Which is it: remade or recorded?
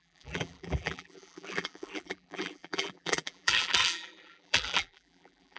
remade